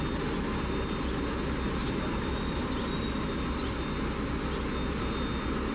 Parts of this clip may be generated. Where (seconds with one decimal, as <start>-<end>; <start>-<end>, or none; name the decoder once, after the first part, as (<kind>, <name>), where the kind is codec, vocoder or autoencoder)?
1.8-2.9 (vocoder, BigVGAN v2)